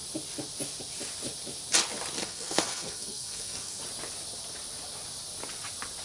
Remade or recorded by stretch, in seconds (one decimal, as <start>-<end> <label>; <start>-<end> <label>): 0.0-2.2 recorded; 2.2-3.8 remade; 3.8-6.0 recorded